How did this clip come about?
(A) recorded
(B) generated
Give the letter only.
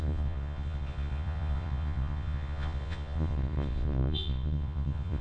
B